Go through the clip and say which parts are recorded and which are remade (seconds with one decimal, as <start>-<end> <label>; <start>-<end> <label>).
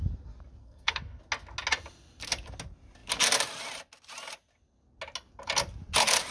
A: 0.0-0.6 recorded; 0.6-1.2 remade; 1.2-6.3 recorded